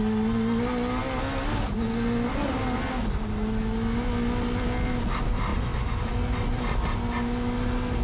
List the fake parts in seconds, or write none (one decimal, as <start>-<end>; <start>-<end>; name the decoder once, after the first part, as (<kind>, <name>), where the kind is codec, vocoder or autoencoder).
none